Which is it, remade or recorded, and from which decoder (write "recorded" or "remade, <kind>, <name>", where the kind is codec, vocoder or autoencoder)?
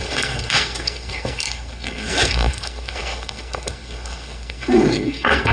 remade, codec, SNAC